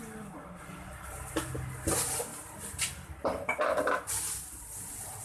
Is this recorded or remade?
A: remade